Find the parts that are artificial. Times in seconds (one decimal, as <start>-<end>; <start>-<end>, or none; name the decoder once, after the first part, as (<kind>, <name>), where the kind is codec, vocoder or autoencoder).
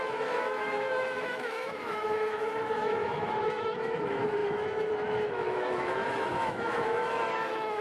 0.0-7.8 (autoencoder, DAC-VAE)